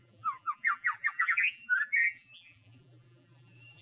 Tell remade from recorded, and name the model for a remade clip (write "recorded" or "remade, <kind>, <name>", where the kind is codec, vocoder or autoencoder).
remade, vocoder, BigVGAN v2